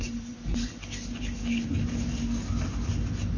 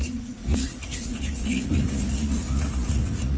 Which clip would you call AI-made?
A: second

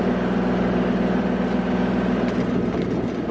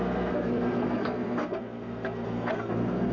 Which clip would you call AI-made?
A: second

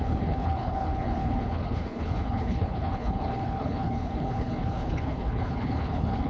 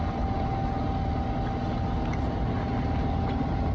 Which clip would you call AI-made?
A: first